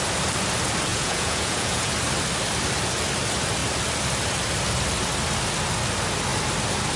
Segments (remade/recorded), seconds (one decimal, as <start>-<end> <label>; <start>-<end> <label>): 0.0-0.9 recorded; 0.9-1.9 remade; 1.9-7.0 recorded